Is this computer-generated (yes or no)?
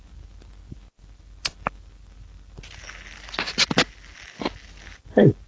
no